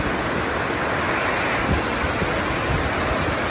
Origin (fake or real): real